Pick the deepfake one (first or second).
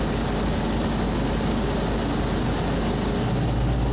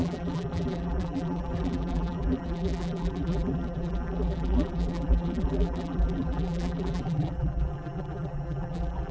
second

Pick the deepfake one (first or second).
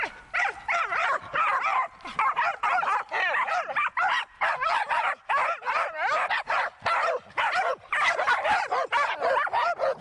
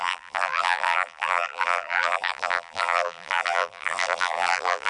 second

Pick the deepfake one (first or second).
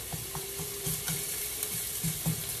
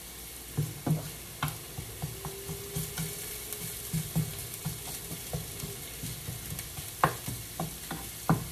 first